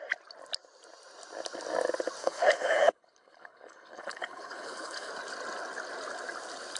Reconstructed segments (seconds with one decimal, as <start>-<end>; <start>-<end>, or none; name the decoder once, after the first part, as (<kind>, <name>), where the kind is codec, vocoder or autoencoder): 2.2-5.1 (codec, HILCodec)